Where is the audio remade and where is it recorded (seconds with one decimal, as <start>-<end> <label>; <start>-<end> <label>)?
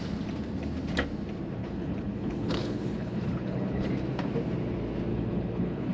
0.0-1.6 recorded; 1.6-3.9 remade; 3.9-5.1 recorded; 5.1-5.9 remade